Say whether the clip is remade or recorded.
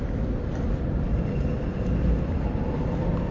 recorded